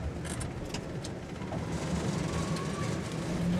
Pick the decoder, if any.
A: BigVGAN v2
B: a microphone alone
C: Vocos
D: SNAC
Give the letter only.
B